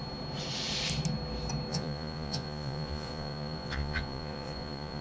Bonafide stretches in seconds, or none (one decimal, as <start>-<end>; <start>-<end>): 0.0-1.7